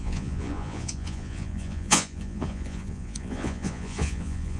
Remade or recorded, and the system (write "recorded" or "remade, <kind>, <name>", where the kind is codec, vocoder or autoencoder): remade, vocoder, Vocos